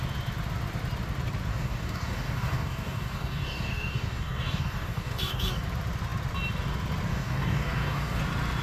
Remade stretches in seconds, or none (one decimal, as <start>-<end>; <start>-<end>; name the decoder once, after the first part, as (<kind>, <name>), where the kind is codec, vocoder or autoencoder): 1.5-5.6 (codec, DAC); 7.1-8.2